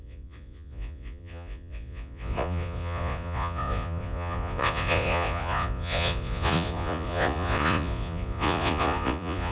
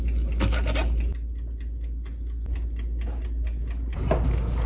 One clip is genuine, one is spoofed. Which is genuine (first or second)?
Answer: second